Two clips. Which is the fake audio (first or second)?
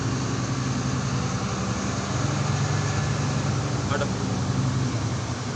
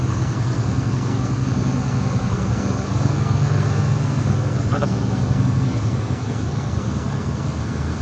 second